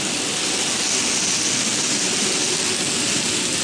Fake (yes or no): no